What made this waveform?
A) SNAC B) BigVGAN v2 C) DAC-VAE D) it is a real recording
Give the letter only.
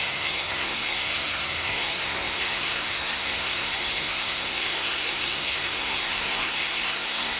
A